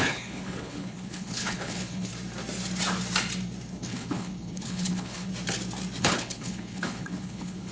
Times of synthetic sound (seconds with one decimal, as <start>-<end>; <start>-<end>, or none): 0.0-2.1; 3.7-5.3; 6.0-7.7